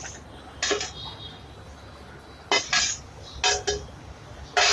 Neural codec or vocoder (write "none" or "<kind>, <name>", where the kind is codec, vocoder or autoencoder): none